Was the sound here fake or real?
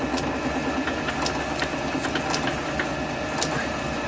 real